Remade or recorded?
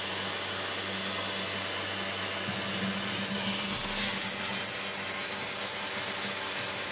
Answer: recorded